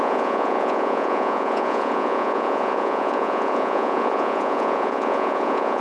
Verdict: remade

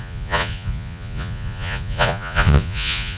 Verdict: remade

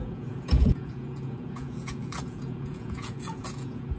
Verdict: remade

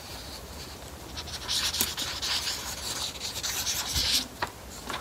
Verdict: recorded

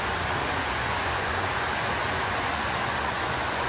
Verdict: remade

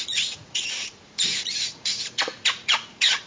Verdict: remade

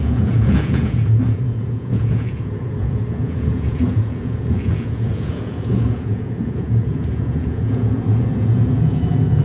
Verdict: remade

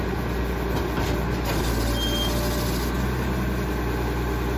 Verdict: recorded